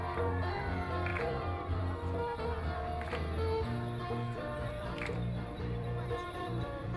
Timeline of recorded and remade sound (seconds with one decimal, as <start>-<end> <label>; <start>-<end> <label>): 0.0-1.1 recorded; 1.1-1.8 remade; 1.8-4.0 recorded; 4.0-7.0 remade